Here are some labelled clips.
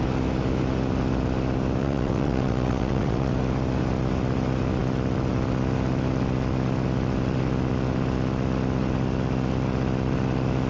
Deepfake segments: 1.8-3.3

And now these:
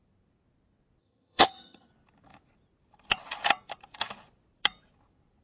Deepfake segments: 1.0-1.9

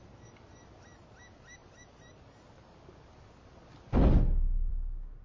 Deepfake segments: none

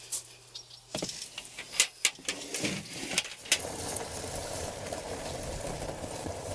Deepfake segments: 4.4-6.5

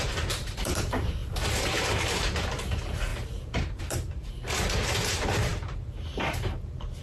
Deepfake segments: 0.0-3.1; 3.8-5.5; 6.2-7.0